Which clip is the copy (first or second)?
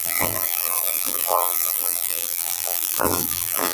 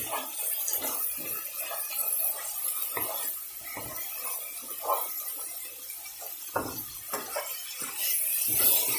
first